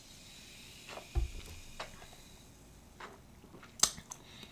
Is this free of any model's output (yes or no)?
yes